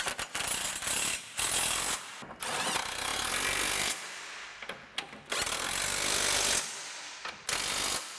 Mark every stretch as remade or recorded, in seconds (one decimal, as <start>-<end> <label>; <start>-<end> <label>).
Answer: 0.0-8.2 recorded